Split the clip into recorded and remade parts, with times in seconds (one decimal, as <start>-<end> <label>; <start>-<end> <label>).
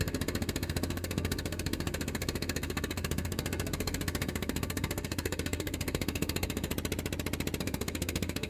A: 0.0-6.7 remade; 6.7-7.6 recorded; 7.6-8.5 remade